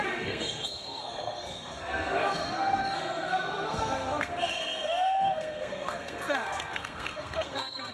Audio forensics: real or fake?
fake